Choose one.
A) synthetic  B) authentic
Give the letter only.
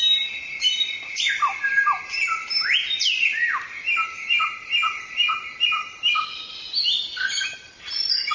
B